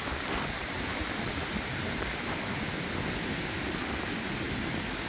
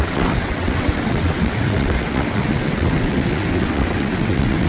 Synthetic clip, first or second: second